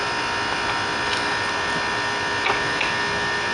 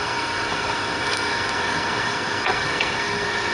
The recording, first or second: first